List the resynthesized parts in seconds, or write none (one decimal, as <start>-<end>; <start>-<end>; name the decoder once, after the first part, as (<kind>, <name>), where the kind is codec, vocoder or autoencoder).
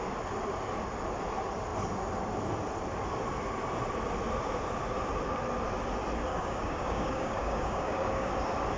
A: 6.3-8.3 (codec, DAC)